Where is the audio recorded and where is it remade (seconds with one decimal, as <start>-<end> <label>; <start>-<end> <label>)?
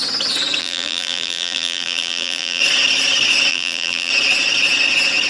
0.0-0.6 recorded; 0.6-2.6 remade; 2.6-3.5 recorded; 3.5-4.1 remade; 4.1-5.3 recorded